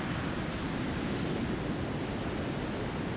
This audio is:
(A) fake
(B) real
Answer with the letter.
B